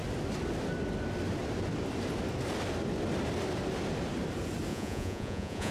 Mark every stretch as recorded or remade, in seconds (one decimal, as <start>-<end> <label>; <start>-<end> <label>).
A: 0.0-4.7 recorded; 4.7-5.7 remade